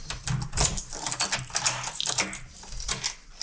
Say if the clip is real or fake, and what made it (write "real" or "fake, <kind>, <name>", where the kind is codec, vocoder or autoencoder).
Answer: real